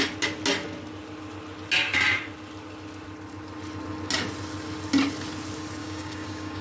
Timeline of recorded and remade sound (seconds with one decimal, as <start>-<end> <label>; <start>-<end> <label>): 0.0-5.8 recorded; 5.8-6.6 remade